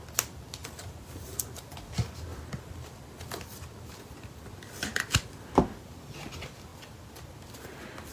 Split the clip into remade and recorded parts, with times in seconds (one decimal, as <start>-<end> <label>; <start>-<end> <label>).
0.0-0.6 recorded; 0.6-1.6 remade; 1.6-2.3 recorded; 2.3-5.6 remade; 5.6-8.1 recorded